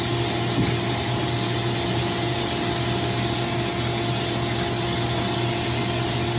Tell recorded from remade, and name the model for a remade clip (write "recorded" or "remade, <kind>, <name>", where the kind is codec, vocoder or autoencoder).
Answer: recorded